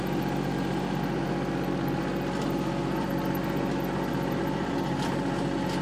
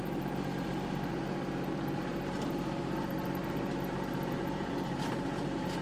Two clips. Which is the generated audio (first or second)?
second